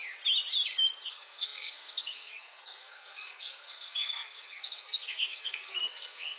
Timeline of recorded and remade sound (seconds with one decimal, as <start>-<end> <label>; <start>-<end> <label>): 0.0-1.1 recorded; 1.1-6.4 remade